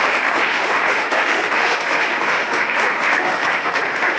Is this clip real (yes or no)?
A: no